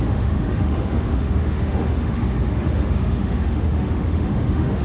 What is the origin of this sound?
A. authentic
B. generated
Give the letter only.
B